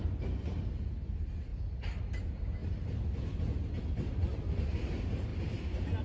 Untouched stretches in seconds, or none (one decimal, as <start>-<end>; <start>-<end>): 0.0-1.5; 2.0-6.0